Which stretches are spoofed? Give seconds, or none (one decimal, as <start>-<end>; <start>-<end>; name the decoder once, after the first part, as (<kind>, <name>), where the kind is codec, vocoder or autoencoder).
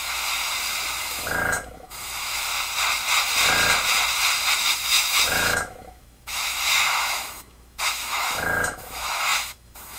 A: 0.0-0.5 (autoencoder, DAC-VAE); 1.0-2.5; 4.6-10.0